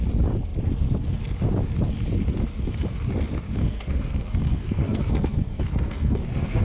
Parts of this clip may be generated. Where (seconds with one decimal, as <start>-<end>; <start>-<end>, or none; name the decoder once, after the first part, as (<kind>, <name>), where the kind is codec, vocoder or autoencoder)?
3.6-6.6 (codec, SNAC)